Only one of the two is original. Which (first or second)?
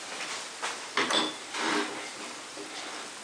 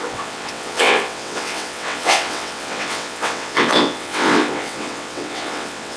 first